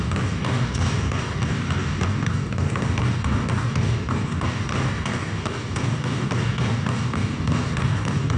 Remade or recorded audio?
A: remade